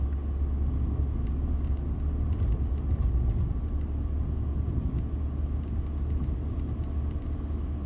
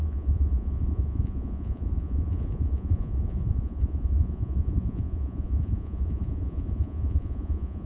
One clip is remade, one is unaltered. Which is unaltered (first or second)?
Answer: first